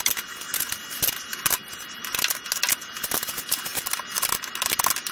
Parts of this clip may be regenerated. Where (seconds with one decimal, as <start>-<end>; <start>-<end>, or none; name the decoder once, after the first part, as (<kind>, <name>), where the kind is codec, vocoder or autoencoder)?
none